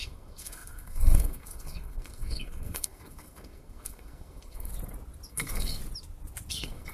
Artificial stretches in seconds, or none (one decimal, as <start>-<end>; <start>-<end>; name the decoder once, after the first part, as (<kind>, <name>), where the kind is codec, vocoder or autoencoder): 0.0-4.7 (codec, SNAC); 5.3-5.8; 6.5-6.9